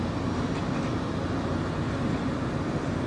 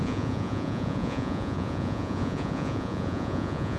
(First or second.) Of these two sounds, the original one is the first